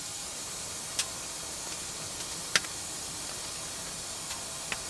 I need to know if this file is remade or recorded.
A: recorded